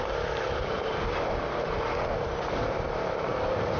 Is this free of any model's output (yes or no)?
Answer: yes